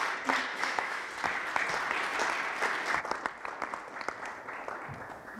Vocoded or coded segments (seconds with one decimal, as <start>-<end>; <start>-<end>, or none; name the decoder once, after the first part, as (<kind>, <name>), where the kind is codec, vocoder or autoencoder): 0.5-1.1 (autoencoder, DAC-VAE)